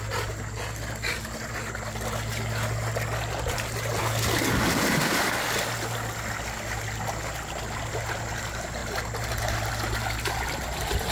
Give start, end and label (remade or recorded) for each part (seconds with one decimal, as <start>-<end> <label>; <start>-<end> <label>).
0.0-11.1 recorded

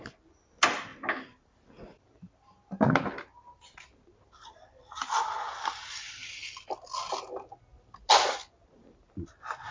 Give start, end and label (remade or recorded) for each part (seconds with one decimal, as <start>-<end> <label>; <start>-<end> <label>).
0.0-9.7 recorded

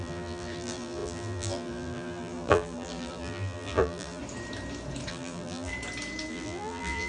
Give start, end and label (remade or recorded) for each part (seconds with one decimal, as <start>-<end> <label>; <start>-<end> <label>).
0.0-4.2 remade; 4.2-5.1 recorded; 5.1-5.7 remade; 5.7-6.3 recorded; 6.3-7.1 remade

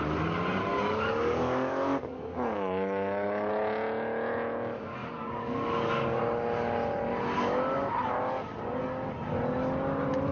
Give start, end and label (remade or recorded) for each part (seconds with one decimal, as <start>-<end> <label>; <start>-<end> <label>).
0.0-0.7 recorded; 0.7-3.5 remade; 3.5-5.0 recorded; 5.0-6.2 remade; 6.2-10.3 recorded